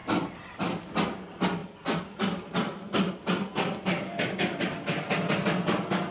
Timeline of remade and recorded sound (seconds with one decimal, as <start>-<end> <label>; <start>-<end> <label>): 0.0-0.8 remade; 0.8-1.6 recorded; 1.6-4.3 remade; 4.3-6.1 recorded